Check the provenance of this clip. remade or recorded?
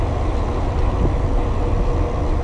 recorded